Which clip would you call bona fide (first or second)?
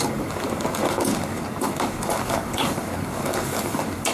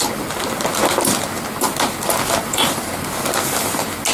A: second